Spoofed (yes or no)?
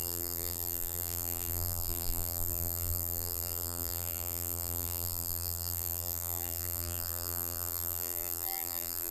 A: yes